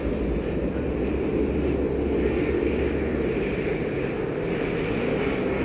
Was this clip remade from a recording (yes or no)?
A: no